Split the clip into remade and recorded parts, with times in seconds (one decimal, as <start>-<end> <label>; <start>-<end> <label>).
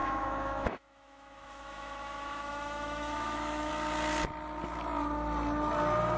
0.0-3.7 remade; 3.7-6.2 recorded